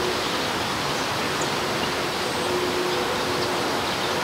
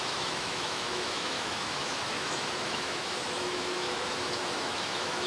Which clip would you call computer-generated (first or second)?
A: second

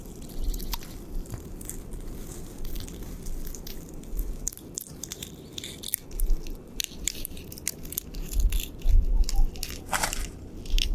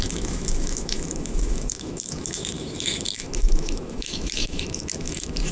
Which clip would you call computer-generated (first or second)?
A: second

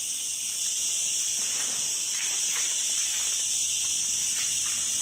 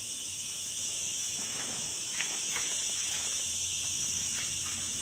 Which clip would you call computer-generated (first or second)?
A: second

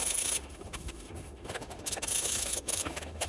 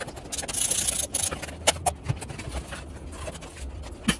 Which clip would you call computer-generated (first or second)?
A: first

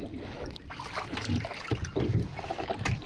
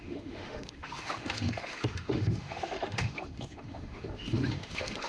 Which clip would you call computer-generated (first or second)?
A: second